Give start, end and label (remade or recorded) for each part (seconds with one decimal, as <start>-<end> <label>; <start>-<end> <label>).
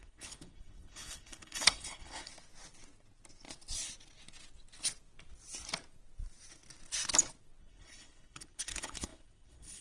0.0-2.3 remade; 2.3-7.6 recorded; 7.6-9.8 remade